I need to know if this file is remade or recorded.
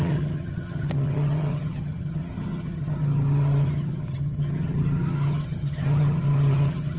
remade